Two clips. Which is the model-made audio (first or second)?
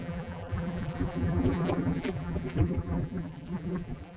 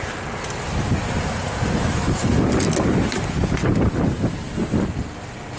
first